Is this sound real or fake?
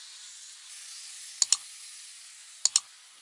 real